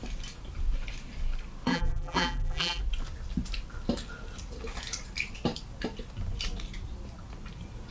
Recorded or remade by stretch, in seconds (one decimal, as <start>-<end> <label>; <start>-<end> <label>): 0.0-1.7 recorded; 1.7-2.8 remade; 2.8-7.9 recorded